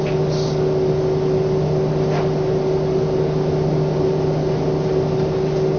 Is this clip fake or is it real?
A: real